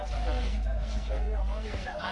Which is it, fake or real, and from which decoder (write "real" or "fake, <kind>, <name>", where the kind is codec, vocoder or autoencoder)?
fake, codec, SNAC